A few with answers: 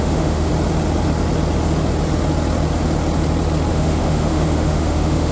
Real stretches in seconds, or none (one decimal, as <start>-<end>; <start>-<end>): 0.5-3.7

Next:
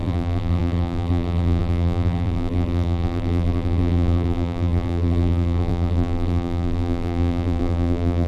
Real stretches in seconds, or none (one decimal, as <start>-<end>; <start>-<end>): none

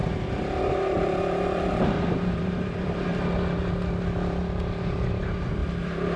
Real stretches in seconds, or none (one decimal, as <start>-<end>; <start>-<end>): 0.0-0.6; 3.1-5.1; 5.6-6.2

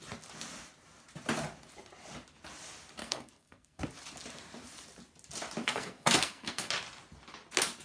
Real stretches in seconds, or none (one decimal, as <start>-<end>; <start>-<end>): 0.0-3.0; 3.8-5.6; 6.7-7.8

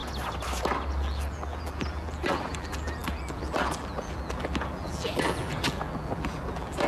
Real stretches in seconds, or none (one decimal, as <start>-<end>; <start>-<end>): 0.0-0.9

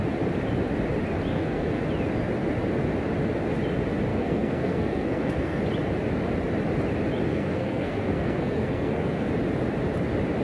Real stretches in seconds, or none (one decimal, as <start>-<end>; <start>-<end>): 0.0-1.3; 1.8-4.1; 5.6-7.3; 9.3-10.4

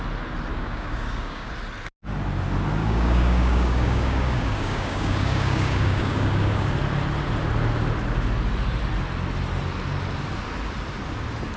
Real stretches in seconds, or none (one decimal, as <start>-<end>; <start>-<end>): 0.0-0.5; 1.5-2.8; 6.7-11.6